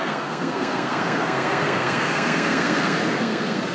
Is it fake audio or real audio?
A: fake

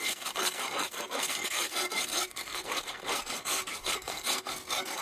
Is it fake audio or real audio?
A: fake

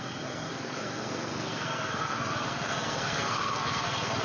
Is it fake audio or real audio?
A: fake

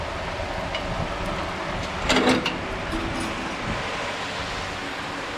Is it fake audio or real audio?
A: real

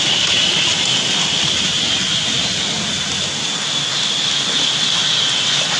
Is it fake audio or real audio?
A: real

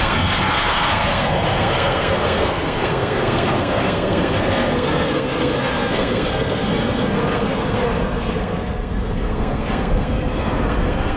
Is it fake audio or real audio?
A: fake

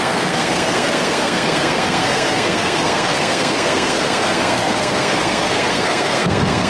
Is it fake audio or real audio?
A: fake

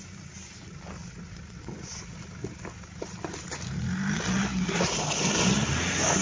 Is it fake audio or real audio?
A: real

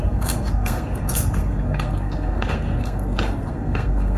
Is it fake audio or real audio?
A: fake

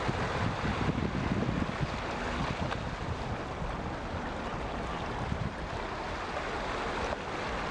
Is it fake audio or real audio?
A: real